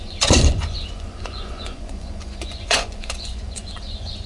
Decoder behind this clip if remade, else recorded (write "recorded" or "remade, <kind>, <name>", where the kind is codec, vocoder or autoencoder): remade, vocoder, Vocos